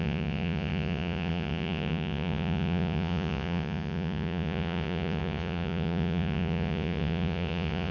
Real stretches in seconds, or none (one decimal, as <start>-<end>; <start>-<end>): none